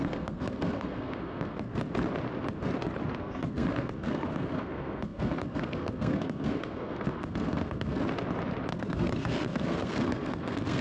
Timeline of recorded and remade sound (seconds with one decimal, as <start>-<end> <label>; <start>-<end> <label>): 0.0-1.7 remade; 1.7-3.2 recorded; 3.2-8.0 remade; 8.0-8.7 recorded; 8.7-10.8 remade